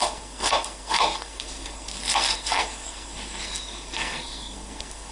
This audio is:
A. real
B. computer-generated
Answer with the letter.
B